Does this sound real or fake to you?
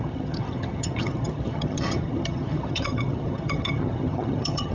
fake